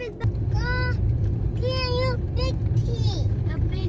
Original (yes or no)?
yes